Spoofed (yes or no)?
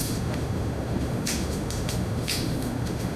yes